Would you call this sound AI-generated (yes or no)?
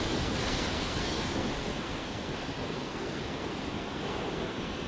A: yes